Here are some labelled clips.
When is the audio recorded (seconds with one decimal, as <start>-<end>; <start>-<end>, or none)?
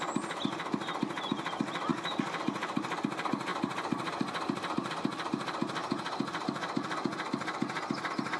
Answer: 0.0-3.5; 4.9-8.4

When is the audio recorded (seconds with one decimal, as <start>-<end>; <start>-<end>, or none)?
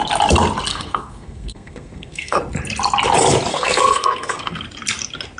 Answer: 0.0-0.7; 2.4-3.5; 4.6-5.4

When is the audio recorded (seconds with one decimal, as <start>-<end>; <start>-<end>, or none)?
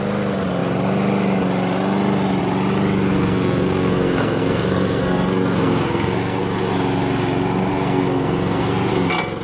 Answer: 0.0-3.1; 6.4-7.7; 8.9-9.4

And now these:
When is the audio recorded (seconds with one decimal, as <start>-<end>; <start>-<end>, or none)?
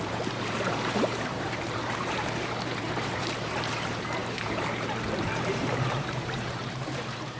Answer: none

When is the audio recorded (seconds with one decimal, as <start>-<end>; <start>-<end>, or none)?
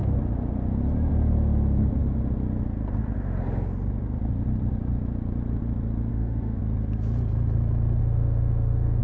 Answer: 0.0-6.1; 6.6-8.0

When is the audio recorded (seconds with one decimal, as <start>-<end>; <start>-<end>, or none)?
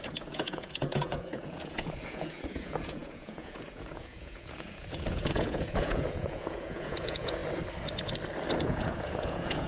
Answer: 7.4-8.6